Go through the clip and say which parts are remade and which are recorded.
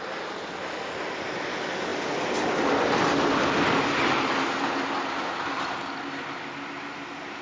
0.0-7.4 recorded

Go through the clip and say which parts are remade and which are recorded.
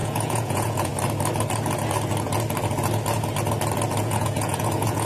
0.0-0.9 remade; 0.9-4.0 recorded; 4.0-5.1 remade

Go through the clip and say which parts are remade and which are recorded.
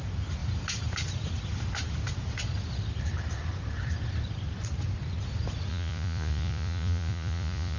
0.0-5.7 recorded; 5.7-7.8 remade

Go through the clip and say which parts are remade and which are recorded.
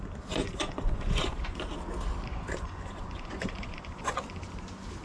0.0-0.4 recorded; 0.4-1.6 remade; 1.6-2.3 recorded; 2.3-4.2 remade; 4.2-5.0 recorded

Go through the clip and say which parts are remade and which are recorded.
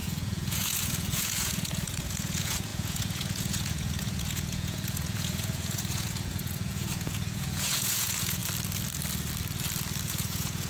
0.0-8.4 remade; 8.4-10.0 recorded; 10.0-10.7 remade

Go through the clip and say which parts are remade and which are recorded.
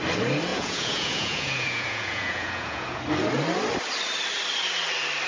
0.0-0.5 recorded; 0.5-3.0 remade; 3.0-5.3 recorded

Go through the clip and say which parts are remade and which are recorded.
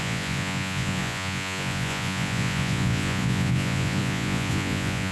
0.0-5.1 remade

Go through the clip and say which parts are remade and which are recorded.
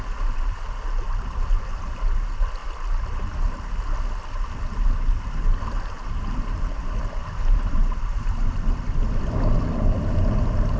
0.0-10.8 recorded